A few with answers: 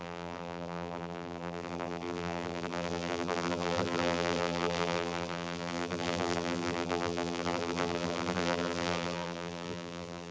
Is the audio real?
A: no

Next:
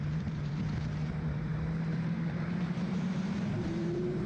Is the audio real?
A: no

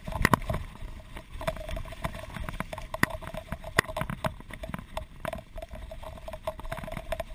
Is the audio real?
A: no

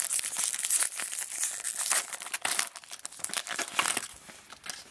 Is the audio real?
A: yes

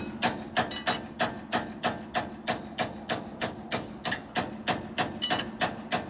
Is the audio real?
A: yes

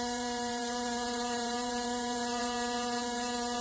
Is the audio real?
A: no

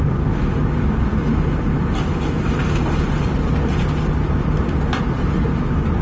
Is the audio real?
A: yes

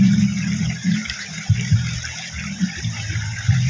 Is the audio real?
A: no